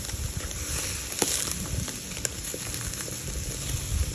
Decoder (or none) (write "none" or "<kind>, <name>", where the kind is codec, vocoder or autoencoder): none